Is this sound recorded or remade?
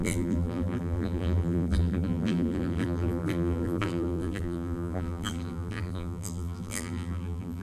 remade